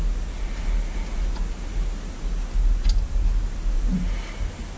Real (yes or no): yes